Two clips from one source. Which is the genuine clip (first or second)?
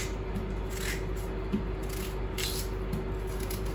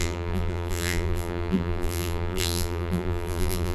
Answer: first